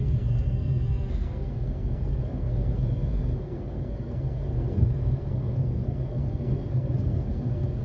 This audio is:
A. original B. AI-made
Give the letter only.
B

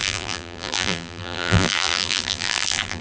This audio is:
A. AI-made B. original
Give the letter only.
A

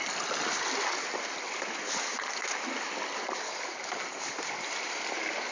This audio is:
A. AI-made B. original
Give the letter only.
B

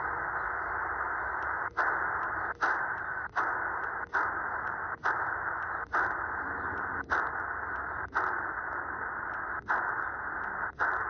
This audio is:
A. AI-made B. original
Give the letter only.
B